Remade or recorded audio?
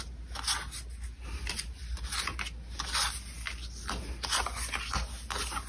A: recorded